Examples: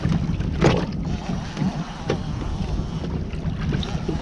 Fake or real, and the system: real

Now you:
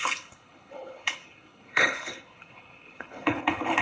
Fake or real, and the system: fake, codec, HILCodec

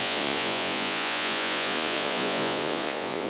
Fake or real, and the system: fake, vocoder, Vocos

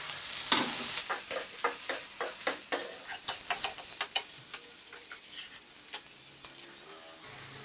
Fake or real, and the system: real